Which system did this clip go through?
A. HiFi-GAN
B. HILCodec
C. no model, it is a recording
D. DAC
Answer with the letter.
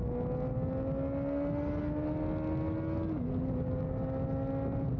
C